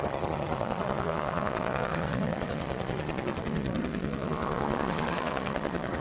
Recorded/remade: remade